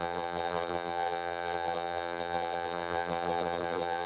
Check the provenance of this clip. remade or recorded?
remade